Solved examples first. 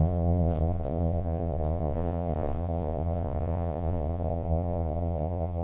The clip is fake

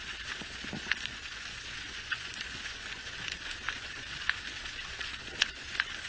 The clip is fake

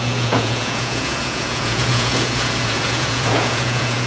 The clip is fake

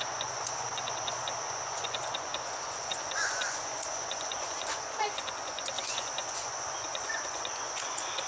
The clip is fake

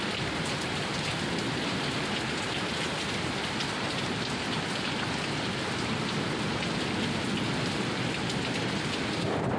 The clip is real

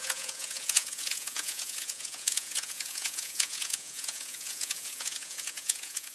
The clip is fake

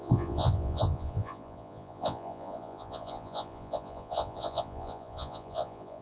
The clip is fake